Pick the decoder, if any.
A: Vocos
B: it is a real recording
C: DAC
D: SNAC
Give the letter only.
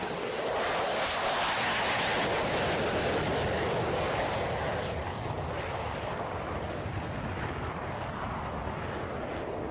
B